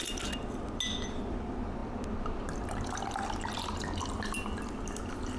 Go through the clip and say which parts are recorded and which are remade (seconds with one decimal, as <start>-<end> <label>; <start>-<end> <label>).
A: 0.0-5.4 recorded